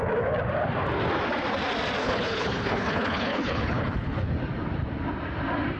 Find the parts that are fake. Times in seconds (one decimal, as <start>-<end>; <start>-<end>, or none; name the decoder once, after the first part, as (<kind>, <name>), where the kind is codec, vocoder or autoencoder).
2.0-4.3 (codec, HILCodec)